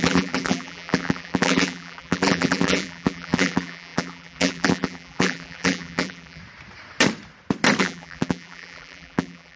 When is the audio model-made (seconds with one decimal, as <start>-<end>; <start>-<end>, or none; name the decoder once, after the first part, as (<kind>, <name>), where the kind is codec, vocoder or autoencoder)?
0.0-6.4 (vocoder, BigVGAN v2); 7.8-9.6